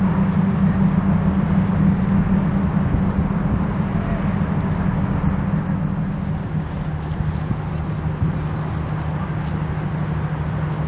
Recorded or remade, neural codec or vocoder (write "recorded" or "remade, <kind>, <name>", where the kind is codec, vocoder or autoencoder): recorded